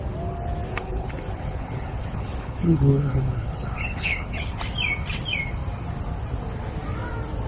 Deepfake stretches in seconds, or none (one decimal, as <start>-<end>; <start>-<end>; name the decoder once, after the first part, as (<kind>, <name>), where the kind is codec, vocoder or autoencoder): 0.7-4.6 (codec, HILCodec)